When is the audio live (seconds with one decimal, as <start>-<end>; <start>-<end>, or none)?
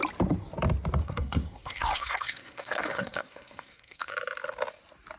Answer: 0.0-1.0; 4.1-5.2